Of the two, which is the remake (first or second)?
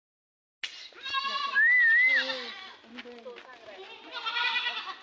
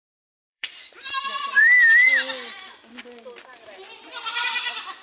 second